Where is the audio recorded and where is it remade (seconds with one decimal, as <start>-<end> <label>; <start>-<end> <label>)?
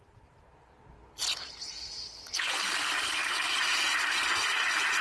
0.0-3.2 recorded; 3.2-4.5 remade; 4.5-5.0 recorded